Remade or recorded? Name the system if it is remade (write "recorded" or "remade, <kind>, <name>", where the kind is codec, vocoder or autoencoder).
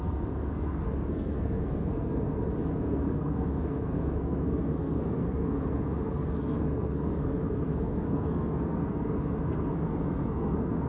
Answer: remade, codec, SNAC